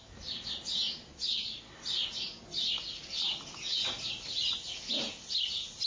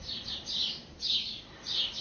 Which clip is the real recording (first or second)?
first